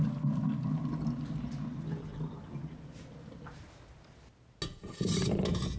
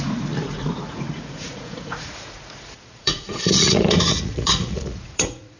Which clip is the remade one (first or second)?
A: second